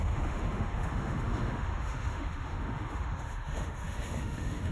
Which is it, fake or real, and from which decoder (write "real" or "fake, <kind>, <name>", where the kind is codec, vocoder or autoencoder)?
fake, autoencoder, DAC-VAE